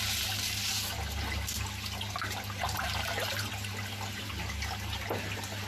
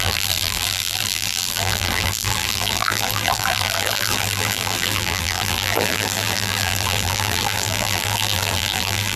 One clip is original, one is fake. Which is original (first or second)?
first